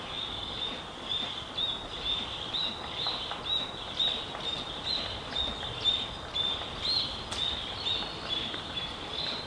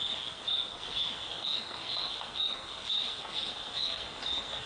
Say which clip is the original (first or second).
first